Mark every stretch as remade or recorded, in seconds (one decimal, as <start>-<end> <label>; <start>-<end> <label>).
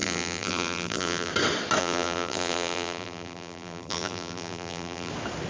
0.0-1.3 remade; 1.3-1.8 recorded; 1.8-5.1 remade; 5.1-5.5 recorded